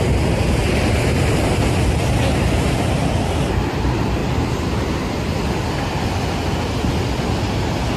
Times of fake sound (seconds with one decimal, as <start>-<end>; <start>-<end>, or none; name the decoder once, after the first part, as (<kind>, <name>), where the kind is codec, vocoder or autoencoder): none